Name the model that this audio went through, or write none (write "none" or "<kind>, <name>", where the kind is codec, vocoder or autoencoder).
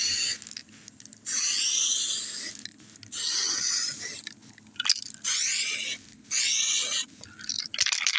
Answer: none